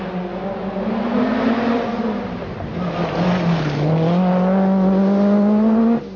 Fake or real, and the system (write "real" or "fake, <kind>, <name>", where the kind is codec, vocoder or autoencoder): real